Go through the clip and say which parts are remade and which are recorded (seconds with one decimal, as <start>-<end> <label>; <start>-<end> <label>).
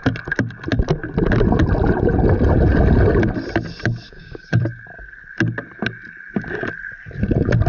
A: 0.0-4.1 recorded; 4.1-4.6 remade; 4.6-7.7 recorded